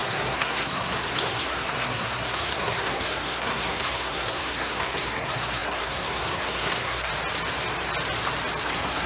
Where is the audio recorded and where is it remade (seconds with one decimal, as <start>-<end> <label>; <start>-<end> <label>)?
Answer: 0.0-7.1 remade; 7.1-8.6 recorded; 8.6-9.1 remade